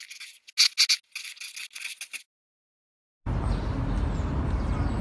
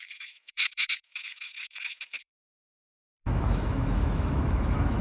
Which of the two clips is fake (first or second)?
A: second